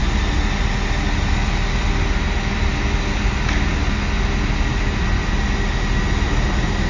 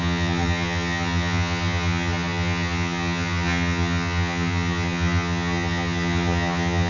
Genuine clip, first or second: first